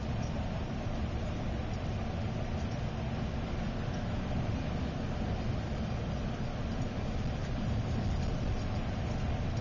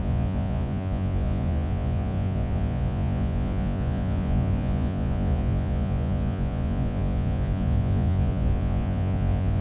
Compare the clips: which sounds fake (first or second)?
second